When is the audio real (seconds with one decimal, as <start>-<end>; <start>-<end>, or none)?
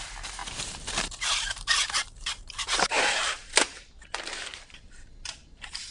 none